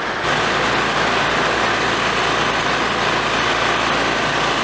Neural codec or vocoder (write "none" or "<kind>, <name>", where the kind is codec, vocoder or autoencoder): none